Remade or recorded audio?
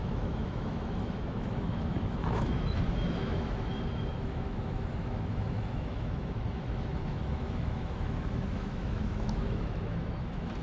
remade